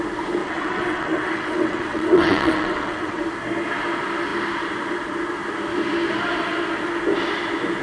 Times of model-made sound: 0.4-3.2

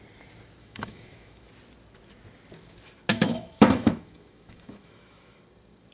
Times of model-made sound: 0.6-1.5; 3.1-5.4

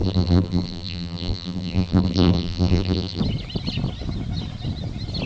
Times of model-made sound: 0.0-3.2

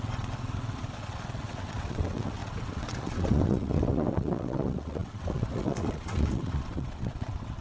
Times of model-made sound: 0.0-7.6

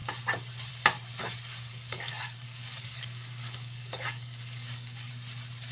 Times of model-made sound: 1.7-5.1

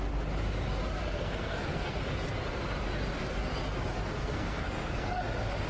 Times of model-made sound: 1.0-2.0; 4.2-5.2

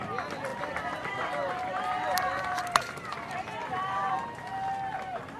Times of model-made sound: 0.5-2.8; 3.6-4.1

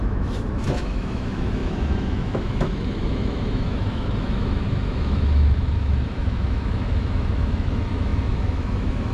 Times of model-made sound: 0.0-9.1